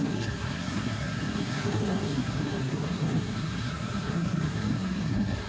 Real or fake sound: fake